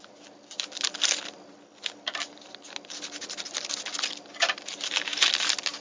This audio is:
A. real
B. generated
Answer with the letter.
A